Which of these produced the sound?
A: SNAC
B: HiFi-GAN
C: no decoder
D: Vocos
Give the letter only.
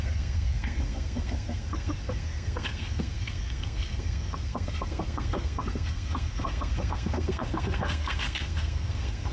A